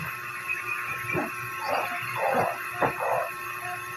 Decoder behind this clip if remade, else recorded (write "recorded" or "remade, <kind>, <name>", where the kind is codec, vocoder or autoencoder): recorded